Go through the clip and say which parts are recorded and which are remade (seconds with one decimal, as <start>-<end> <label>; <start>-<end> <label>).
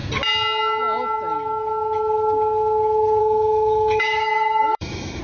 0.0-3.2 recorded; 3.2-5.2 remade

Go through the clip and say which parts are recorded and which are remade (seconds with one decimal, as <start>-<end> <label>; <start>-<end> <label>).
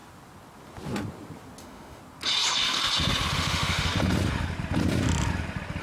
0.0-1.6 recorded; 1.6-2.0 remade; 2.0-3.3 recorded; 3.3-3.9 remade; 3.9-5.8 recorded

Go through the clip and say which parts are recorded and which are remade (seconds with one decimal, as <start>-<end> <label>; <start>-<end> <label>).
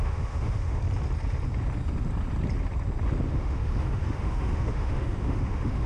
0.0-0.8 remade; 0.8-3.3 recorded; 3.3-5.9 remade